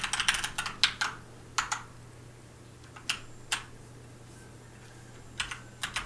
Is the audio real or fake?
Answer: real